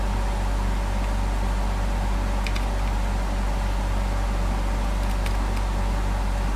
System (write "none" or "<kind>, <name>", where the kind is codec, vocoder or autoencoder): none